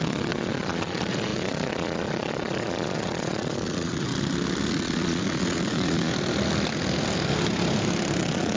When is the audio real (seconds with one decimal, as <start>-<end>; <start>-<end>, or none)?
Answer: 4.1-4.7; 6.1-8.2